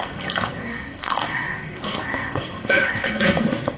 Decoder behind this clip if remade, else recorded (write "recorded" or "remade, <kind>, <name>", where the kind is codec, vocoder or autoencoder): remade, codec, SNAC